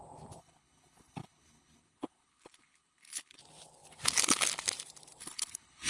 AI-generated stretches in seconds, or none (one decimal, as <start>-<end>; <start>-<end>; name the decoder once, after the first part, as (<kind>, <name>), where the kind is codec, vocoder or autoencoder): 0.4-3.4 (codec, HILCodec); 5.2-5.9